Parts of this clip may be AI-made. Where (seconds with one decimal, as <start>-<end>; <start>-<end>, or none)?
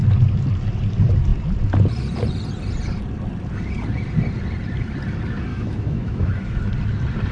5.5-6.7